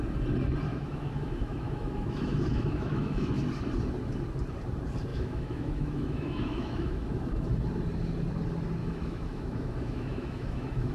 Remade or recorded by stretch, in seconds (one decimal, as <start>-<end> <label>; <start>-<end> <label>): 0.0-0.7 recorded; 0.7-3.4 remade; 3.4-5.1 recorded; 5.1-7.5 remade; 7.5-8.8 recorded; 8.8-10.9 remade